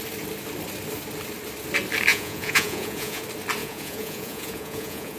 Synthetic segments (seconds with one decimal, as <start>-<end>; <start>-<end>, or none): 2.1-3.2; 3.6-5.2